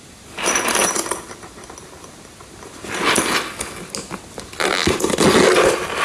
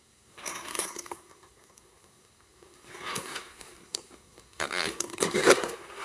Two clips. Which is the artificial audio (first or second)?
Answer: second